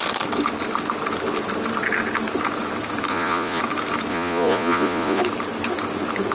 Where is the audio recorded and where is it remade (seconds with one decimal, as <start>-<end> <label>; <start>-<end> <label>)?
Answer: 0.0-3.1 recorded; 3.1-3.6 remade; 3.6-4.1 recorded; 4.1-5.2 remade; 5.2-6.3 recorded